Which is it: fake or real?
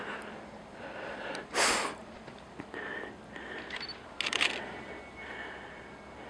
real